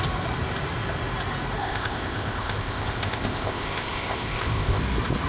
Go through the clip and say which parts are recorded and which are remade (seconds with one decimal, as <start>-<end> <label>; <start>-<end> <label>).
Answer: 0.0-1.6 recorded; 1.6-4.8 remade; 4.8-5.3 recorded